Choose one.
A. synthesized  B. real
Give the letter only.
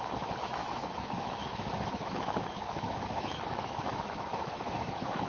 A